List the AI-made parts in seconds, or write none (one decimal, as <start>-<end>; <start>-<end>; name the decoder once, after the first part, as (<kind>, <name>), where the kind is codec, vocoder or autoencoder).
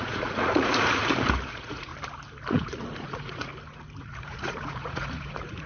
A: 0.0-1.0 (vocoder, Vocos); 1.5-1.9; 2.5-3.5; 4.0-5.7